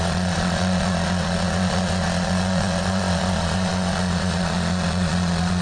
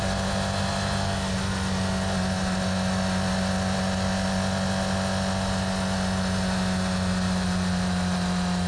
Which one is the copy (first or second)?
first